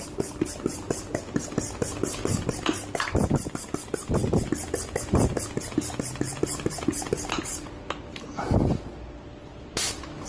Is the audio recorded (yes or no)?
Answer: yes